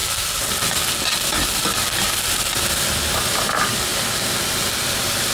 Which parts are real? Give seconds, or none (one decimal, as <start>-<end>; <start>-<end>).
0.0-5.3